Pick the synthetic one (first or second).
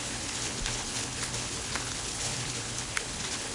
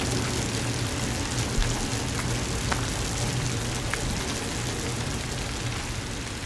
first